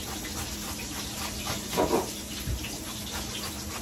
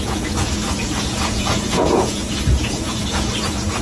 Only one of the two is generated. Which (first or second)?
second